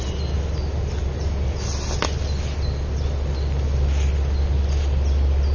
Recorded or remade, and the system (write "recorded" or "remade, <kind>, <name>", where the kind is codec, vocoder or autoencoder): recorded